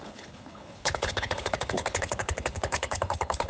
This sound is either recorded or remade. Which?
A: remade